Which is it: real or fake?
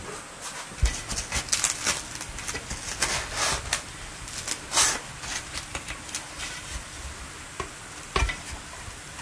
real